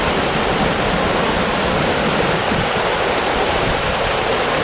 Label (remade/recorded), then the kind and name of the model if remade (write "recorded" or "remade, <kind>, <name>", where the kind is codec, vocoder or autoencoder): recorded